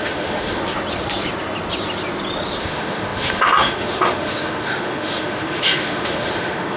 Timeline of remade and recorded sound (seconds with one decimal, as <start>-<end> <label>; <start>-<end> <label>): 0.0-0.6 remade; 0.6-2.6 recorded; 2.6-6.8 remade